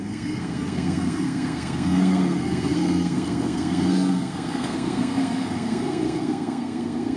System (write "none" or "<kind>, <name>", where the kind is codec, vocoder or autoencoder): codec, SNAC